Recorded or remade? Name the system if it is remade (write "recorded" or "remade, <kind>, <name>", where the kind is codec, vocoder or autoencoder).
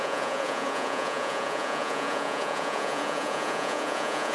remade, vocoder, Vocos